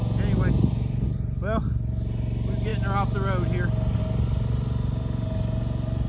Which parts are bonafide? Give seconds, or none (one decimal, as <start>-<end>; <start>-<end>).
0.0-6.1